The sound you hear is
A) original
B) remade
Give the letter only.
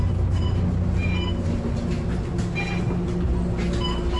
A